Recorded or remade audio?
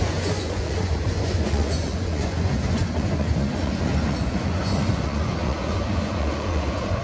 remade